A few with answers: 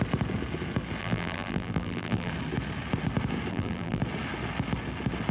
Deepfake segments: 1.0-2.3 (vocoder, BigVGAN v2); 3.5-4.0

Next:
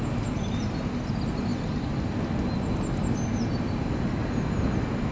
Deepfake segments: none

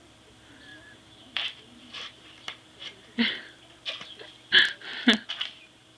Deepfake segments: 0.7-3.3 (vocoder, BigVGAN v2); 4.9-6.0

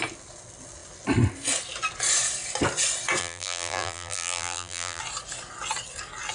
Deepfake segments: 3.2-5.0 (vocoder, BigVGAN v2)